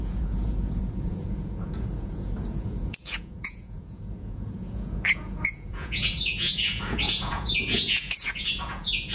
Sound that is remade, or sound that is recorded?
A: remade